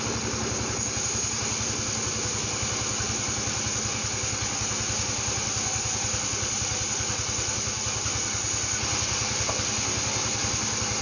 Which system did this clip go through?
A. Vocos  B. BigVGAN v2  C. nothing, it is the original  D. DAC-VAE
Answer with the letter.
C